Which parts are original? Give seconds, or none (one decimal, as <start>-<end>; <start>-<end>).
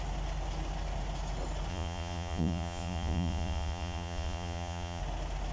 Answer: 0.0-1.7; 5.0-5.5